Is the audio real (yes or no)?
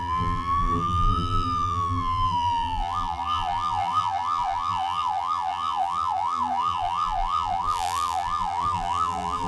no